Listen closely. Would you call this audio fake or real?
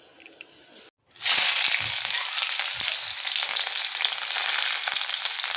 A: real